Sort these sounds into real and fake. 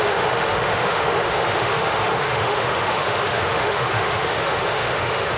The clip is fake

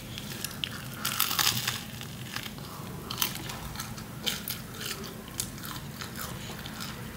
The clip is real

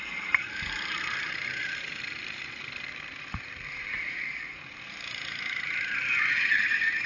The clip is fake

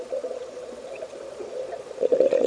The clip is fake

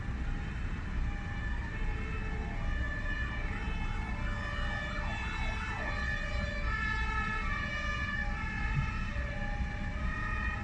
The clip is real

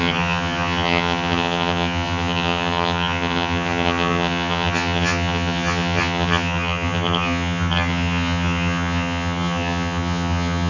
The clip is fake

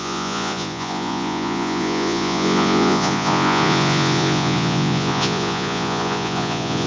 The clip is fake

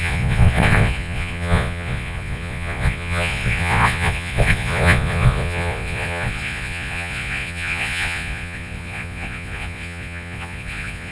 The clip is fake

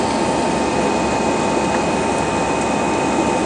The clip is real